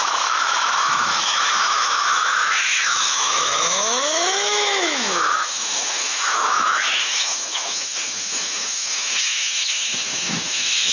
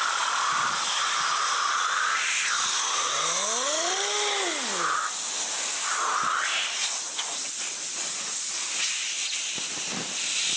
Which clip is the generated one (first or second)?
first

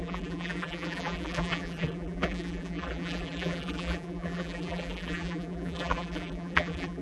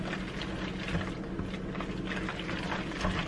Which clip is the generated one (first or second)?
first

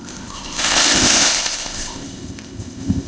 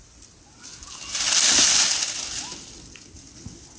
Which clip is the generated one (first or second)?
first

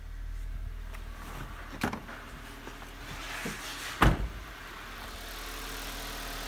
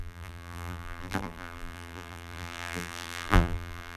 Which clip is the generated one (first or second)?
second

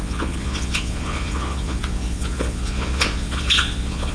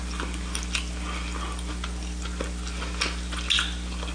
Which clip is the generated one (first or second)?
first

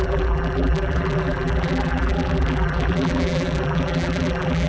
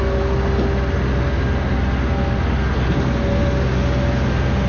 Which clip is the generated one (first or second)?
first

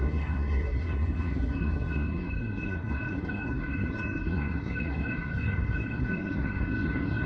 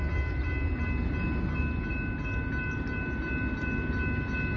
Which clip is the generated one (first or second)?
first